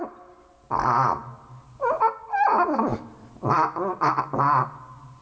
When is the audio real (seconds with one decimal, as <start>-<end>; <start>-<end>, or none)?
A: 0.0-5.2